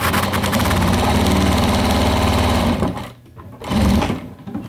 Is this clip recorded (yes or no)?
yes